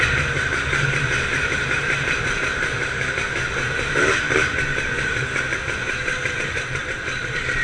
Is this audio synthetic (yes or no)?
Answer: yes